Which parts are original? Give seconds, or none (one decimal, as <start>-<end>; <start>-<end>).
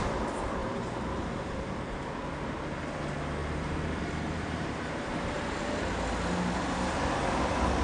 0.0-0.6; 2.1-3.4; 5.6-7.8